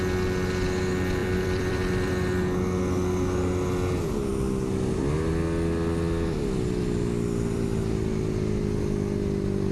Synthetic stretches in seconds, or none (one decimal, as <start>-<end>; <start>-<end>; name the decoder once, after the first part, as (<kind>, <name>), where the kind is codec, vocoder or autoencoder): 1.2-2.1 (vocoder, BigVGAN v2)